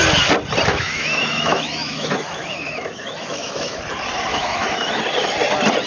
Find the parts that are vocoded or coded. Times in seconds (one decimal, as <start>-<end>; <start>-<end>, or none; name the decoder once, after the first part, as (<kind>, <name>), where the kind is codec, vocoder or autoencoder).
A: 0.7-3.8 (autoencoder, DAC-VAE); 4.3-5.0